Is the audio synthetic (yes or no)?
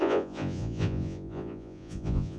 yes